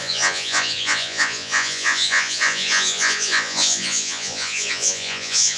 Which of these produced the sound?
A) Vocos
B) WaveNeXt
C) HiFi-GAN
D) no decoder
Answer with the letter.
A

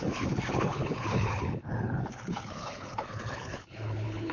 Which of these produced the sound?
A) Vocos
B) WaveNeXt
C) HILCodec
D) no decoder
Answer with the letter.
C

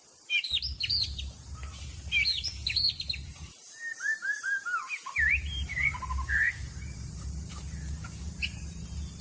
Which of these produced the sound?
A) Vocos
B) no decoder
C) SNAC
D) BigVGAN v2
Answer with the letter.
B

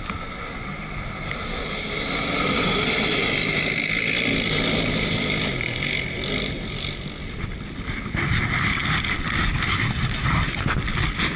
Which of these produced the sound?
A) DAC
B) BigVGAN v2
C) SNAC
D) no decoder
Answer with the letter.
B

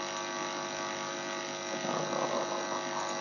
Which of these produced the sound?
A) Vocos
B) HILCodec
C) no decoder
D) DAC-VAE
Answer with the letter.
C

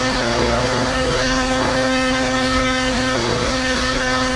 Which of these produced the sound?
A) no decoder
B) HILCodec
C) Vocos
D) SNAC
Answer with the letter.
D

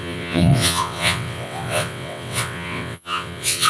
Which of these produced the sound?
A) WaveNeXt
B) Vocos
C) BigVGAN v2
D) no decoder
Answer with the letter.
A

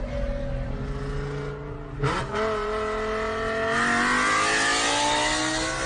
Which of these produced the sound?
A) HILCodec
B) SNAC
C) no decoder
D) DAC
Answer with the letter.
C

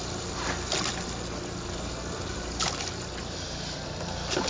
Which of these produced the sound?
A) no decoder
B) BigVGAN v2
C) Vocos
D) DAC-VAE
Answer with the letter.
A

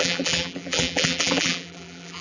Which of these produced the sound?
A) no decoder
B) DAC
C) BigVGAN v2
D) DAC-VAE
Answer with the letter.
C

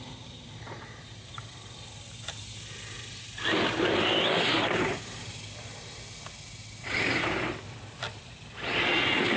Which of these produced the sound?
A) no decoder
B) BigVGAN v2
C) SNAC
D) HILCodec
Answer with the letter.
A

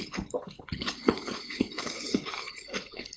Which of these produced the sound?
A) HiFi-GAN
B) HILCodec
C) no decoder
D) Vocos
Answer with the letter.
B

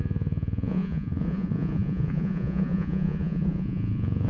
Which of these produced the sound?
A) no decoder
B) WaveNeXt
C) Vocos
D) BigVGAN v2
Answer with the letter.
C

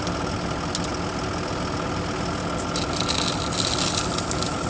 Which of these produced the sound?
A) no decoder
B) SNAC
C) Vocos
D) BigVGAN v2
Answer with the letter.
A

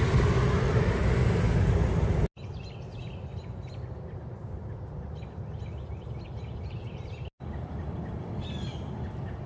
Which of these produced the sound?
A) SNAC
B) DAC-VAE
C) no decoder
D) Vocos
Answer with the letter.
C